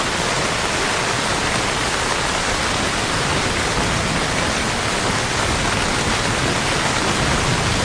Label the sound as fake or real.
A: real